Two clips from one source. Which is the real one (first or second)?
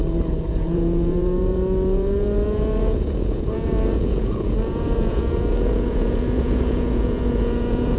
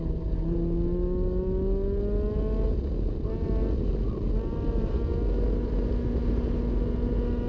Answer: second